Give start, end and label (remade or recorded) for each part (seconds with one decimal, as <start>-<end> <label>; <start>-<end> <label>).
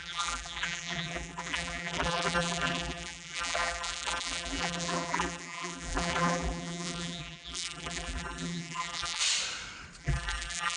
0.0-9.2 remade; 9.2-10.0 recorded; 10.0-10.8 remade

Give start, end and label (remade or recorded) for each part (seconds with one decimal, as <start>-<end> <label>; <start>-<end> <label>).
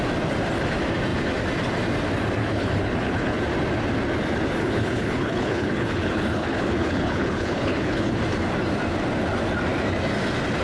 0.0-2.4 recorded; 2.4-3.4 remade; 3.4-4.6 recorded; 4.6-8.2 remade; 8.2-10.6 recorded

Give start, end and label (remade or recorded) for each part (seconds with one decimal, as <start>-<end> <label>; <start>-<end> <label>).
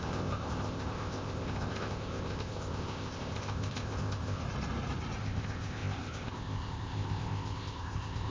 0.0-4.4 remade; 4.4-5.2 recorded; 5.2-8.3 remade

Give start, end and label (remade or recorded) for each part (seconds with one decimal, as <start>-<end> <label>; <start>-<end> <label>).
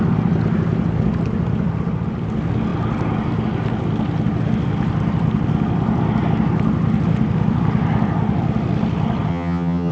0.0-9.3 recorded; 9.3-9.9 remade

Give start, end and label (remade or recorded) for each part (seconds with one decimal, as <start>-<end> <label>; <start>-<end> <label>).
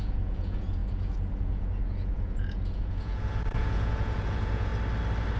0.0-4.7 remade; 4.7-5.4 recorded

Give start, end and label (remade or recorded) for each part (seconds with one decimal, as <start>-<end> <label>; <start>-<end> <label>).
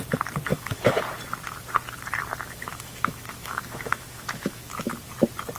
0.0-0.5 recorded; 0.5-1.0 remade; 1.0-2.7 recorded; 2.7-4.9 remade; 4.9-5.6 recorded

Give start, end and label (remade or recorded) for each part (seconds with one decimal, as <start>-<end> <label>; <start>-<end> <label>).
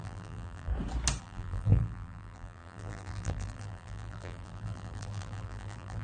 0.0-0.7 remade; 0.7-1.2 recorded; 1.2-6.0 remade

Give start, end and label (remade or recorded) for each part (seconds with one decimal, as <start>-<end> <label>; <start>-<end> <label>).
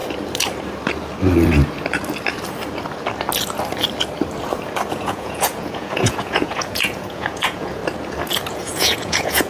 0.0-4.9 recorded; 4.9-7.8 remade; 7.8-8.5 recorded; 8.5-9.5 remade